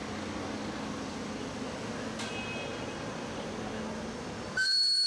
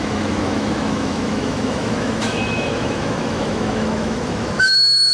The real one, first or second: first